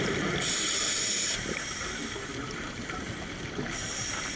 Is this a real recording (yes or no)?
yes